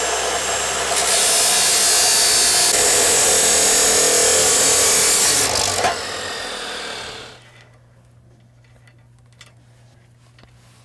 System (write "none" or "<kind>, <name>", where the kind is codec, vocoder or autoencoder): none